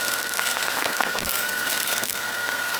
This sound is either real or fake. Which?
fake